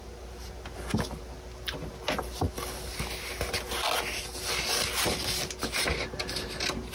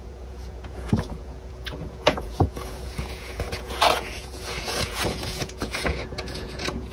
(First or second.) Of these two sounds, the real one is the first